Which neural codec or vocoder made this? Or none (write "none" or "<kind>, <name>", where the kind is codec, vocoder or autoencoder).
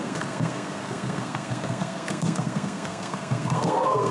codec, SNAC